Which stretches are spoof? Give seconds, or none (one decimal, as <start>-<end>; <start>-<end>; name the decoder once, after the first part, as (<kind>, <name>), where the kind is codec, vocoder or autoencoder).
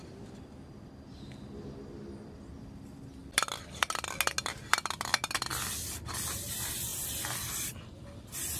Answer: 3.2-3.8 (vocoder, BigVGAN v2); 5.5-6.1